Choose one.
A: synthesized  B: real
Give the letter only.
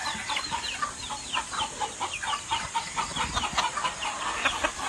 A